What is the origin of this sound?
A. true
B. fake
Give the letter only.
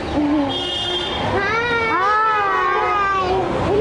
A